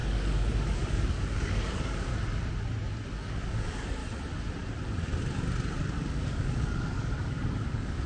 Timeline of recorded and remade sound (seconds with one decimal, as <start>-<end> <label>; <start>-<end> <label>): 0.0-2.1 remade; 2.1-3.1 recorded; 3.1-4.0 remade; 4.0-5.8 recorded; 5.8-8.1 remade

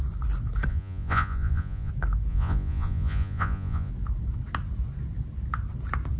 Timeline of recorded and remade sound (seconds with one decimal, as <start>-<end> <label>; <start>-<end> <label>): 0.0-0.7 recorded; 0.7-1.9 remade; 1.9-2.3 recorded; 2.3-3.9 remade; 3.9-6.2 recorded

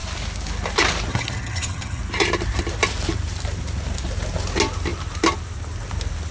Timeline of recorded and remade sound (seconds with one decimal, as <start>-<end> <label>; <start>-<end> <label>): 0.0-1.1 recorded; 1.1-2.0 remade; 2.0-6.3 recorded

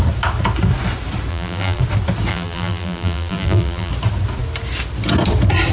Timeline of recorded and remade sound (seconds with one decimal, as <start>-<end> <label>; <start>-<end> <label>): 0.0-1.3 recorded; 1.3-1.8 remade; 1.8-2.3 recorded; 2.3-3.9 remade; 3.9-5.7 recorded

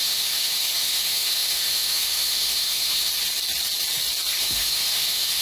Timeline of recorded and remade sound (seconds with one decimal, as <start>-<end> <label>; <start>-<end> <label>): 0.0-3.1 remade; 3.1-4.4 recorded; 4.4-5.4 remade